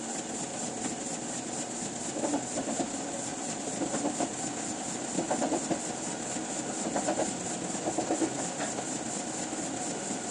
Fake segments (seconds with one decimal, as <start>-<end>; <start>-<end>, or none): 3.3-5.9